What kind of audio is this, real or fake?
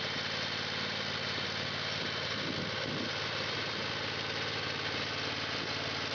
real